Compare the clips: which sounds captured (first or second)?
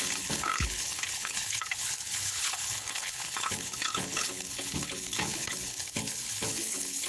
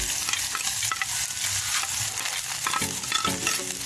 second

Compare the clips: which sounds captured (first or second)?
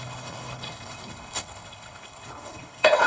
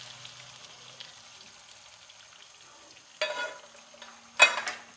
second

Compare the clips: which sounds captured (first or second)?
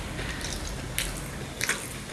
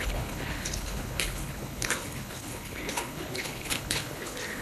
first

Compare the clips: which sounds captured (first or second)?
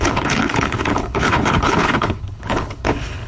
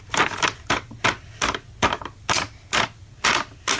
second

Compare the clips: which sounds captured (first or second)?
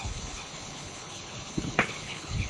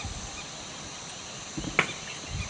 second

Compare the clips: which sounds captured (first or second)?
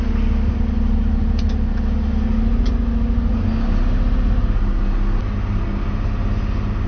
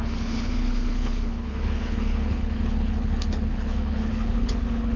first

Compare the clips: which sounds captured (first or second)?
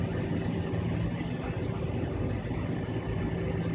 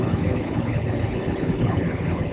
first